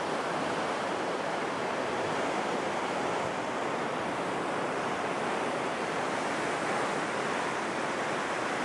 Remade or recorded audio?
recorded